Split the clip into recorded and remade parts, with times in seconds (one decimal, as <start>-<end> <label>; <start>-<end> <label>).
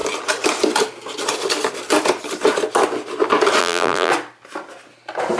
0.0-3.6 recorded; 3.6-4.1 remade; 4.1-5.4 recorded